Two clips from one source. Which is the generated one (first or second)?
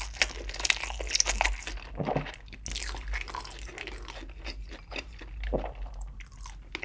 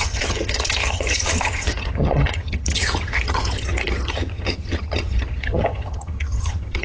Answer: second